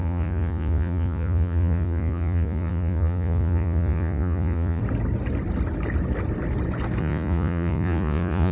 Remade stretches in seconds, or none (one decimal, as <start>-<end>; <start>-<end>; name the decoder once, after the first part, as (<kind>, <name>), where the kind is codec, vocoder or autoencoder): 0.0-4.8 (vocoder, Vocos); 7.0-8.5